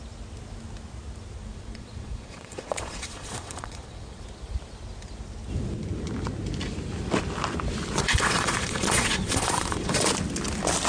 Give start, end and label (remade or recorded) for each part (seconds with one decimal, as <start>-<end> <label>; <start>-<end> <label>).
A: 0.0-1.4 recorded; 1.4-4.2 remade; 4.2-8.0 recorded; 8.0-10.1 remade; 10.1-10.9 recorded